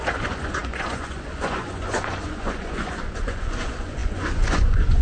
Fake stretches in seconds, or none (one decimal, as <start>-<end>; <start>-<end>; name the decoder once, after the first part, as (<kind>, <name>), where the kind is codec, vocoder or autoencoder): 0.0-5.0 (vocoder, Vocos)